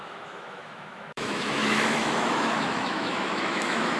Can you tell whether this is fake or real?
fake